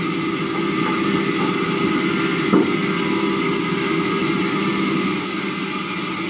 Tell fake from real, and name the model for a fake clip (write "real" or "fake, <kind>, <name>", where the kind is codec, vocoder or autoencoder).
real